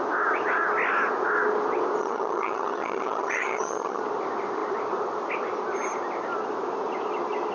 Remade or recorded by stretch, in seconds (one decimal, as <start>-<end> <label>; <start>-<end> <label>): 0.0-2.0 recorded; 2.0-4.0 remade; 4.0-7.5 recorded